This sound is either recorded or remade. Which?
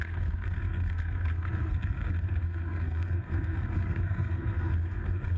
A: remade